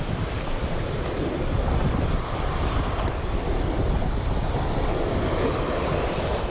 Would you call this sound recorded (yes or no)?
yes